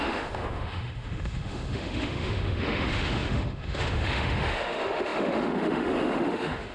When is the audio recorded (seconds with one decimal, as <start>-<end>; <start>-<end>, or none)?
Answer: none